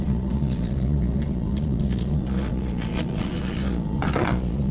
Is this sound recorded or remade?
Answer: remade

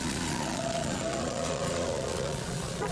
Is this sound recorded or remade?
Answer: remade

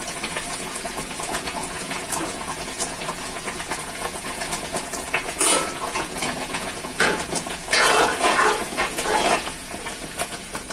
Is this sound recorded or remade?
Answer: remade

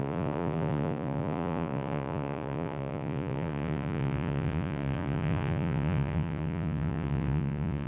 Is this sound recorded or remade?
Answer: remade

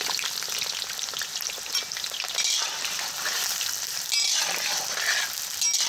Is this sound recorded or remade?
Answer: recorded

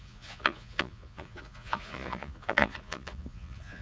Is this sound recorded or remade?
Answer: remade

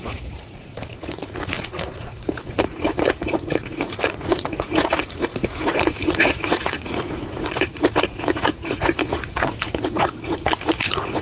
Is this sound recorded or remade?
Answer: remade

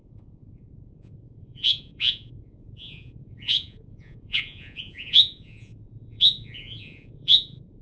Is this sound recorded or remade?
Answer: remade